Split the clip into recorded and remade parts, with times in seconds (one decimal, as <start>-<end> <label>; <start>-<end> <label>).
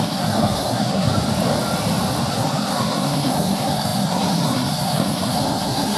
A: 0.0-1.1 remade; 1.1-2.3 recorded; 2.3-6.0 remade